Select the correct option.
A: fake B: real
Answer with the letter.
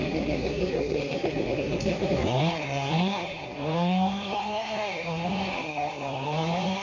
A